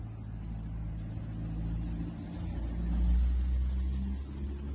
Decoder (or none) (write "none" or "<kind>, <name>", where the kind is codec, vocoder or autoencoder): none